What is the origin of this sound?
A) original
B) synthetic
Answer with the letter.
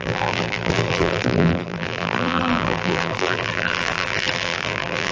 B